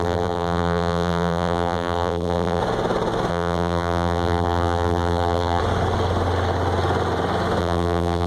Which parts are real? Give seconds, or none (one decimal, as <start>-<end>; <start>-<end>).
2.6-3.3; 5.6-7.6